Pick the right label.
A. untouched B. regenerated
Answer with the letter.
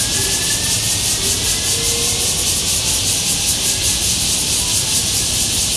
A